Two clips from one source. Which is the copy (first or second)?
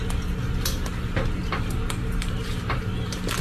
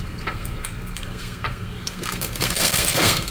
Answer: second